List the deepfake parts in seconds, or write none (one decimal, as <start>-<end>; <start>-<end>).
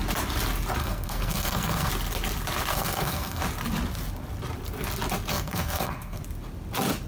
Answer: 0.8-1.9; 2.7-3.4; 5.3-6.2